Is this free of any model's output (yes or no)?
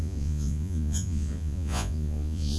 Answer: no